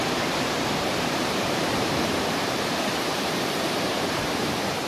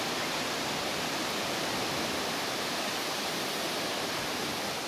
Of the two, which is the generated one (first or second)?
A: first